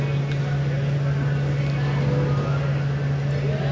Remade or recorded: recorded